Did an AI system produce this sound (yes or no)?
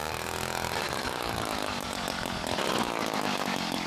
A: yes